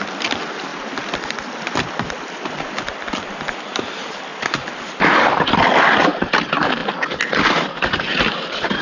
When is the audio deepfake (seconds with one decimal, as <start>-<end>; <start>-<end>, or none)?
none